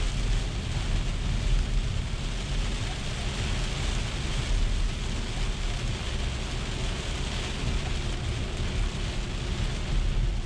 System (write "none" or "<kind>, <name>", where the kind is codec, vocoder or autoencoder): none